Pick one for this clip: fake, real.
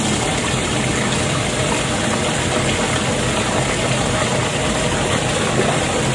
real